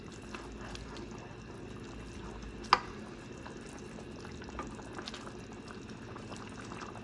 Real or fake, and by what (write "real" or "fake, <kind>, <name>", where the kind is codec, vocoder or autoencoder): real